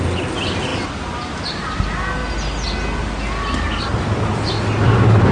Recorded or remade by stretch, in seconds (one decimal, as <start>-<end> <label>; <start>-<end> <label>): 0.0-5.3 recorded